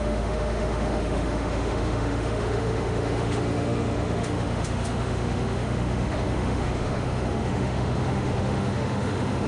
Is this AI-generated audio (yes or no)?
yes